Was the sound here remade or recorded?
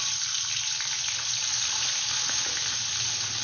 recorded